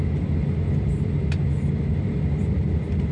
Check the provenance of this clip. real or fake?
real